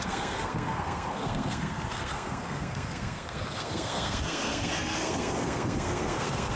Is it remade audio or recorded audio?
remade